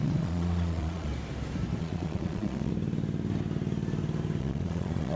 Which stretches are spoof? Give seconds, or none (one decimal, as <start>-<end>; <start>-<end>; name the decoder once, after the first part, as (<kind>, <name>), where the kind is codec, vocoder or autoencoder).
0.0-1.1 (vocoder, Vocos); 1.8-2.7; 4.4-5.2